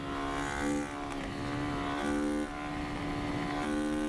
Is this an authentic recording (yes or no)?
yes